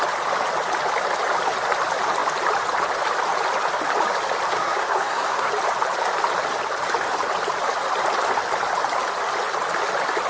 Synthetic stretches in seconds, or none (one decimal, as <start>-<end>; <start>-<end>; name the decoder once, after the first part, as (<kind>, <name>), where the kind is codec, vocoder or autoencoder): 4.5-5.5 (codec, SNAC)